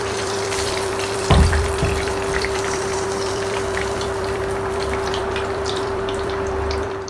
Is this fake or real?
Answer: fake